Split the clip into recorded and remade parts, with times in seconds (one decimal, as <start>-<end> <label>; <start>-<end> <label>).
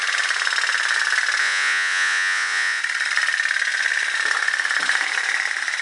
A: 0.0-1.4 recorded; 1.4-2.8 remade; 2.8-5.8 recorded